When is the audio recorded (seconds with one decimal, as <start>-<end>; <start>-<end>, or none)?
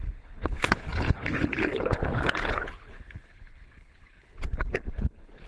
none